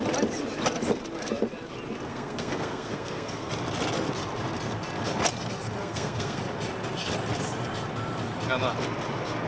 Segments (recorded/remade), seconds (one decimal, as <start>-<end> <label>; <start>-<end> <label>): 0.0-2.1 recorded; 2.1-3.5 remade; 3.5-5.8 recorded; 5.8-6.4 remade; 6.4-9.5 recorded